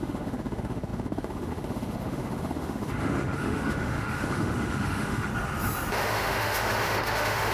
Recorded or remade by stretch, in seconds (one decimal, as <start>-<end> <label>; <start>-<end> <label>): 0.0-5.3 remade; 5.3-5.9 recorded; 5.9-7.5 remade